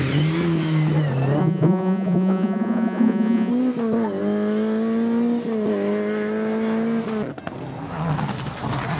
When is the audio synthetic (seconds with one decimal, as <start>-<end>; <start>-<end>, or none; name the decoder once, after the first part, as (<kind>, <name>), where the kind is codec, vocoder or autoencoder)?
1.4-3.5 (vocoder, Vocos)